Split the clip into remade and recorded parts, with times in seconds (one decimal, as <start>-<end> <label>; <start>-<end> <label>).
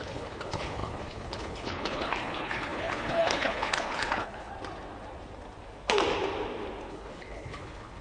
0.0-4.5 remade; 4.5-6.9 recorded; 6.9-8.0 remade